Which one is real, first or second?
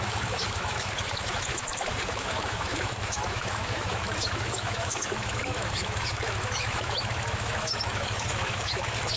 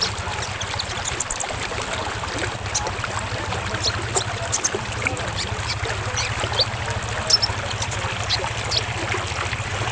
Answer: second